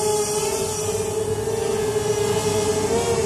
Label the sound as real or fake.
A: real